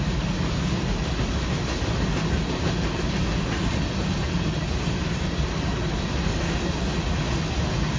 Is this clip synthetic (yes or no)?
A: no